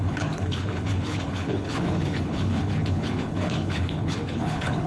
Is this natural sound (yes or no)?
no